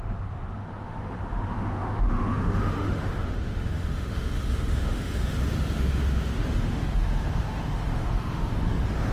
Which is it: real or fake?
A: fake